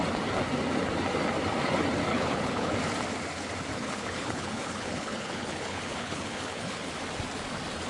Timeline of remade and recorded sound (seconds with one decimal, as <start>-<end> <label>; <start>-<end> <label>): 0.0-2.1 recorded; 2.1-2.7 remade; 2.7-3.7 recorded; 3.7-6.9 remade; 6.9-7.9 recorded